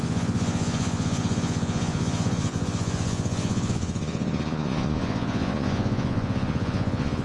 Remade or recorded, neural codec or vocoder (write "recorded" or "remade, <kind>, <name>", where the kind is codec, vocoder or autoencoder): remade, vocoder, Vocos